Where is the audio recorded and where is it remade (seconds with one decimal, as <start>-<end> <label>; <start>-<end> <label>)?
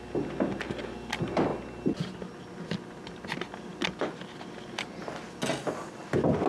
0.0-6.5 recorded